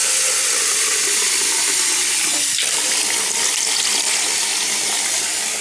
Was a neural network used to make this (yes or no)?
no